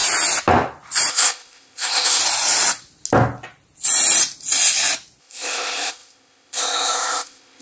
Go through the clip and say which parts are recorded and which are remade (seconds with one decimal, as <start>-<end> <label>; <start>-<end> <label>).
0.0-1.1 recorded; 1.1-2.2 remade; 2.2-5.2 recorded; 5.2-7.6 remade